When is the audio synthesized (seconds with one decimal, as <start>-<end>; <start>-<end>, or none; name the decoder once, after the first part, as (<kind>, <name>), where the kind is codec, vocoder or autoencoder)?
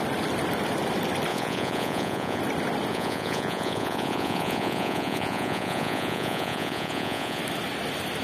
1.3-2.4 (vocoder, Vocos); 2.9-7.4